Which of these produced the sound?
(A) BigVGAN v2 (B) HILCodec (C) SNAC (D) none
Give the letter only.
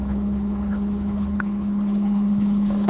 B